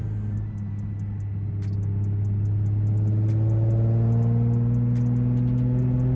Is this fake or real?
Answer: real